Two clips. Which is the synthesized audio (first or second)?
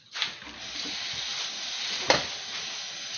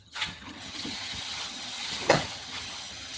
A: second